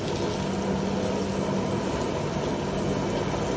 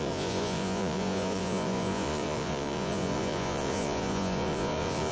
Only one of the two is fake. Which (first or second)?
second